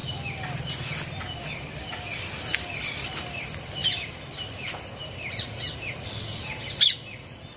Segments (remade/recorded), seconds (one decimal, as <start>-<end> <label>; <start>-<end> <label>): 0.0-7.6 recorded